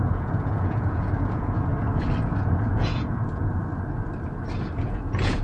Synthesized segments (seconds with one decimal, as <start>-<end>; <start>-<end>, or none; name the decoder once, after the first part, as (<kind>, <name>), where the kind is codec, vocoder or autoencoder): 0.0-1.7 (vocoder, Vocos); 2.4-3.6; 4.7-5.4